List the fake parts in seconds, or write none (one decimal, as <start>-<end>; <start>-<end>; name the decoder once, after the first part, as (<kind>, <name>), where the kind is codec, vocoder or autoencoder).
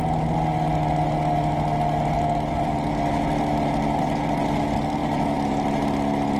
none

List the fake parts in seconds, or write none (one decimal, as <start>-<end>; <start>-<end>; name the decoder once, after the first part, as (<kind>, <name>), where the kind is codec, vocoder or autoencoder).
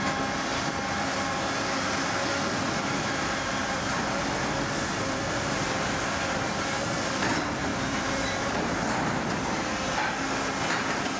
3.6-6.3 (vocoder, BigVGAN v2); 7.7-10.1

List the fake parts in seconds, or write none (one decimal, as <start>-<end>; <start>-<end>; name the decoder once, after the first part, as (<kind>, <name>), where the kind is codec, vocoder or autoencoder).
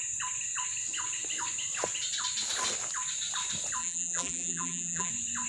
3.8-5.1 (vocoder, BigVGAN v2)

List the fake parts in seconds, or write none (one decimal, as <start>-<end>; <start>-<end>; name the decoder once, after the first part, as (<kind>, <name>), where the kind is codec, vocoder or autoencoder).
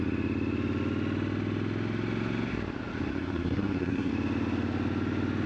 3.1-4.1 (codec, SNAC)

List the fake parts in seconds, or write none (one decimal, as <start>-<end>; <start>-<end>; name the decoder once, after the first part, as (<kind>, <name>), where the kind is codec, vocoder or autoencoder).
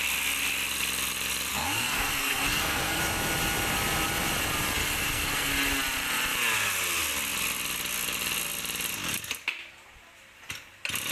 1.5-3.0 (codec, SNAC); 4.8-5.5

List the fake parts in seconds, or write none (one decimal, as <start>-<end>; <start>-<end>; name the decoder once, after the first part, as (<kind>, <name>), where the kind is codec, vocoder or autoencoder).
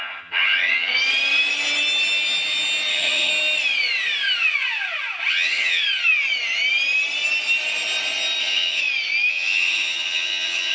0.0-0.9 (vocoder, HiFi-GAN); 2.9-3.3; 5.3-5.8; 8.4-8.8; 9.3-10.7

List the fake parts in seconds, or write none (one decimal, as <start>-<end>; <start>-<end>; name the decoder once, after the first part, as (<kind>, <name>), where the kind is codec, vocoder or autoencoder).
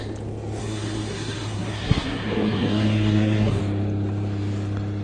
0.6-3.6 (codec, SNAC)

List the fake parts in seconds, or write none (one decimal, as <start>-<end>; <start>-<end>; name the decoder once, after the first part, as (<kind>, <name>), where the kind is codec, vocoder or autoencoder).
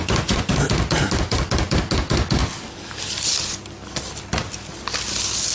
0.0-0.5 (vocoder, Vocos)